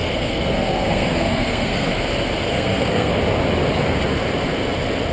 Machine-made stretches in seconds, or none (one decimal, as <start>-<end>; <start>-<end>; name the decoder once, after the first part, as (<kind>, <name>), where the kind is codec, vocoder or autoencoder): 0.0-1.9 (codec, SNAC); 2.5-3.1